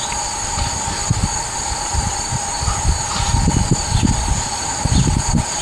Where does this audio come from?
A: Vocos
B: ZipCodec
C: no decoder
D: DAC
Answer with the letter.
C